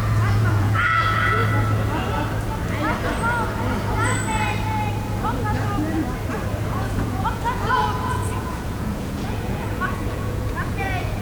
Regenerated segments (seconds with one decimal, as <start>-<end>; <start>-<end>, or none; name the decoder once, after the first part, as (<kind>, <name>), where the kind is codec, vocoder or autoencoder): 0.0-1.4 (vocoder, Vocos); 6.7-11.2